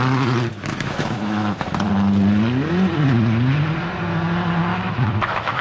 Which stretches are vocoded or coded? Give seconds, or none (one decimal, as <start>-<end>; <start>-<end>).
0.7-1.9; 4.7-5.6